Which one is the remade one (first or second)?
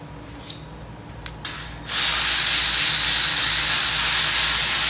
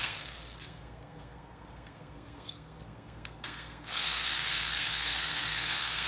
second